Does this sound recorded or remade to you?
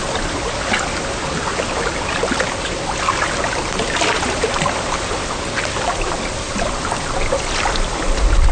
recorded